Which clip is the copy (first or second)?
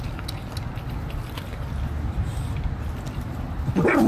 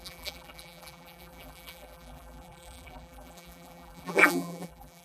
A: second